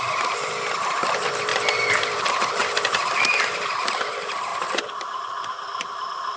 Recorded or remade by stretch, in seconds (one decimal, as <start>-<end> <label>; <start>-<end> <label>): 0.0-2.6 remade; 2.6-4.1 recorded; 4.1-4.5 remade; 4.5-5.4 recorded; 5.4-6.4 remade